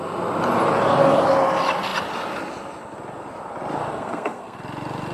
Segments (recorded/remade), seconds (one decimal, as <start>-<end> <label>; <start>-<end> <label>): 0.0-3.9 recorded; 3.9-4.6 remade; 4.6-5.1 recorded